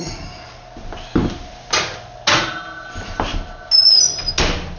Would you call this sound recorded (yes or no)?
yes